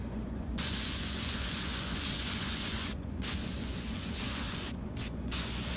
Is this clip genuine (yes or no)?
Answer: no